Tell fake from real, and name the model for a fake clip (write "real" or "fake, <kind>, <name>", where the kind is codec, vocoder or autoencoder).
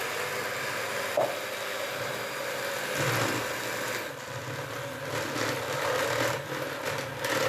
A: real